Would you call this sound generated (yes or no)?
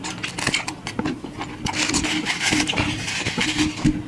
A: no